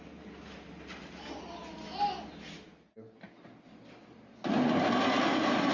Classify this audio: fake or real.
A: real